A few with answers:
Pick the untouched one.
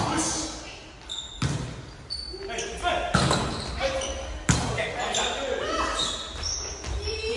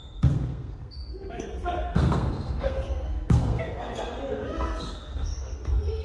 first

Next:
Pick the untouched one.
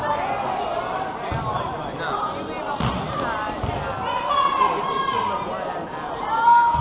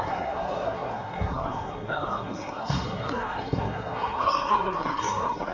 first